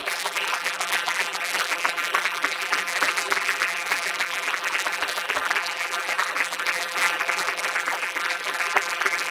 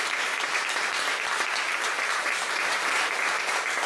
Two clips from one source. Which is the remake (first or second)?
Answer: first